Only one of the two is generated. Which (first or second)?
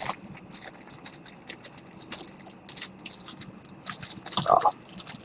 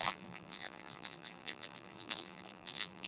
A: second